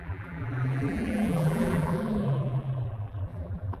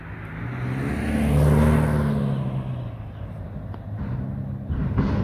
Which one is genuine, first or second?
second